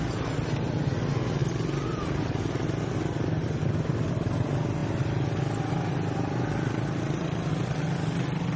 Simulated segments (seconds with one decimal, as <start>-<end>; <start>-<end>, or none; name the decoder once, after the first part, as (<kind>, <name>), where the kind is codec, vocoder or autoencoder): none

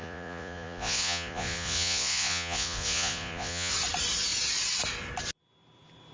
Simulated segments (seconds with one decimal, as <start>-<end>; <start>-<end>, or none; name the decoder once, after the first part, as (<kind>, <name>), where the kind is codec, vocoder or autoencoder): 0.0-3.7 (vocoder, Vocos)